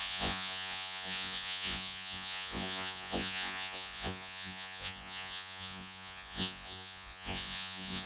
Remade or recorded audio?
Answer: remade